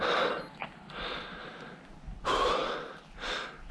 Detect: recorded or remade recorded